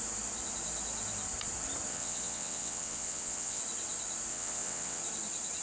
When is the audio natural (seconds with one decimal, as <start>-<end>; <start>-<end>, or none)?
0.0-1.9; 3.6-4.3; 5.0-5.6